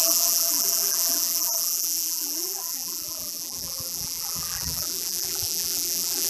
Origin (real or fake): fake